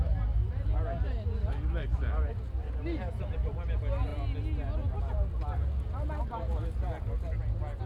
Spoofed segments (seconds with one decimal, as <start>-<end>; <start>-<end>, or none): none